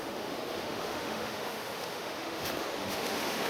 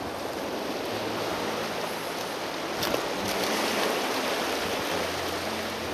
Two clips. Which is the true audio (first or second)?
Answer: second